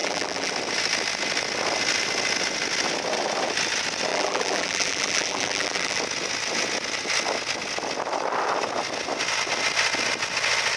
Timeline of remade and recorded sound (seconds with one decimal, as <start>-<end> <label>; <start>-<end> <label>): 0.0-0.5 remade; 0.5-4.1 recorded; 4.1-6.0 remade; 6.0-10.8 recorded